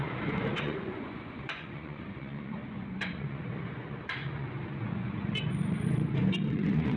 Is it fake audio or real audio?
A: fake